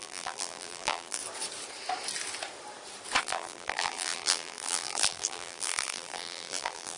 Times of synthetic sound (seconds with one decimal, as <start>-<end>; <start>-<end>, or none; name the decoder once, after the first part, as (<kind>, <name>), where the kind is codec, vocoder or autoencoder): 0.0-1.2 (vocoder, BigVGAN v2); 3.2-7.0